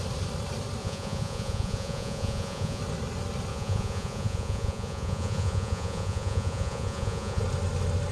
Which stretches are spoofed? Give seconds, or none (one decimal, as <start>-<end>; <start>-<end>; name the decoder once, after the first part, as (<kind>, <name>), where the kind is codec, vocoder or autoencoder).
0.8-2.8 (vocoder, Vocos); 3.5-7.4